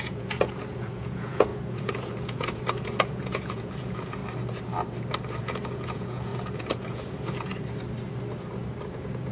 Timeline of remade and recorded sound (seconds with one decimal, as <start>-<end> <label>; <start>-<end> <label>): 0.0-4.2 remade; 4.2-5.4 recorded; 5.4-7.5 remade; 7.5-8.9 recorded; 8.9-9.3 remade